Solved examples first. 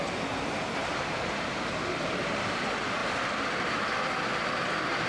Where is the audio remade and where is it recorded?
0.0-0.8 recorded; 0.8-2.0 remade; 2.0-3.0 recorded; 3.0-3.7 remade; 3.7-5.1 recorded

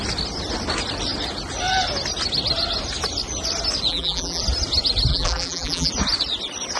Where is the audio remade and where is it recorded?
0.0-3.9 recorded; 3.9-4.4 remade; 4.4-5.1 recorded; 5.1-5.9 remade; 5.9-6.8 recorded

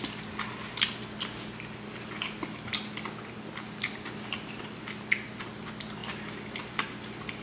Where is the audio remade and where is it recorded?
0.0-7.4 recorded

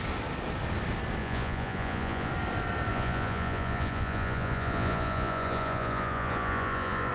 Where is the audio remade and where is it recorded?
0.0-1.2 recorded; 1.2-2.3 remade; 2.3-2.9 recorded; 2.9-7.1 remade

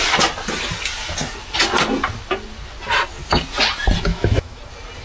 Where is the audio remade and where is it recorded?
0.0-4.1 recorded; 4.1-4.6 remade; 4.6-5.0 recorded